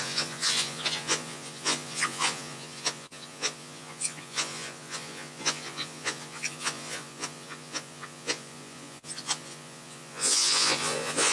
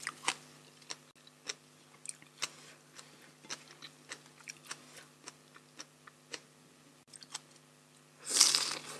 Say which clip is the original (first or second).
second